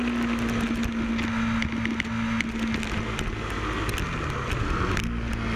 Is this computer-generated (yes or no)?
no